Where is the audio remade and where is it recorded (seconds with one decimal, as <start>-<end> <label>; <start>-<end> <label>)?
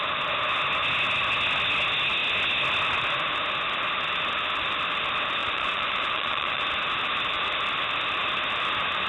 0.0-5.4 recorded; 5.4-6.6 remade; 6.6-9.1 recorded